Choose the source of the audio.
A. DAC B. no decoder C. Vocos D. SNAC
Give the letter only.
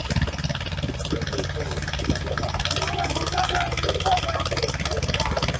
B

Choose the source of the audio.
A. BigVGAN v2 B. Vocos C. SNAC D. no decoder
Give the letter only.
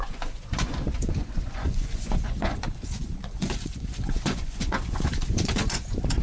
B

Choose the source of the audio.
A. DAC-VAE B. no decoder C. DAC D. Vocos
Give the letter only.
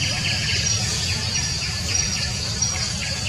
D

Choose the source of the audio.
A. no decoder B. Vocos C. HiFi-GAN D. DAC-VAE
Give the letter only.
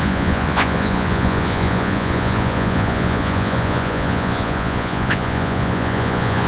B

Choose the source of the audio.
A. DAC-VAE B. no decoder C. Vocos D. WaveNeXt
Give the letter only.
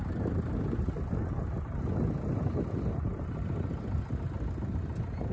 B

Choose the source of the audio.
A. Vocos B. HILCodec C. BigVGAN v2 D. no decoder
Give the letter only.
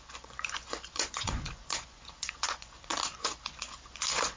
A